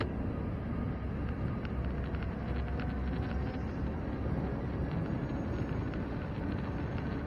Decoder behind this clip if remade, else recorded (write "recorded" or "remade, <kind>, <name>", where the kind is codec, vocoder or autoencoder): recorded